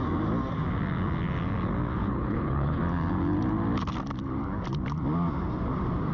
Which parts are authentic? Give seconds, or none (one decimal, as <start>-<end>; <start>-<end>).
0.0-2.0; 2.8-6.1